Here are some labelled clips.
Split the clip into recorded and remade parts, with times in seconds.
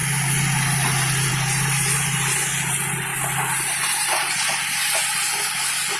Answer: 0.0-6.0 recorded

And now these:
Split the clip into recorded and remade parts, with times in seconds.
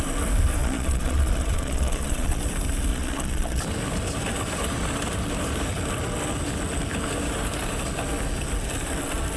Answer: 0.0-0.6 recorded; 0.6-2.4 remade; 2.4-2.9 recorded; 2.9-3.6 remade; 3.6-9.4 recorded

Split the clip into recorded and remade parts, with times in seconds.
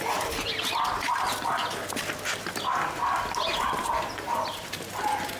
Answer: 0.0-5.4 recorded